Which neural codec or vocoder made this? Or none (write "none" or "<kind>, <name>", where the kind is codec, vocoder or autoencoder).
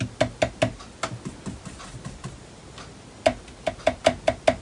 none